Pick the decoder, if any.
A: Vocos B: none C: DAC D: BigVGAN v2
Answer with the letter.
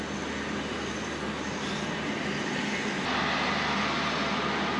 B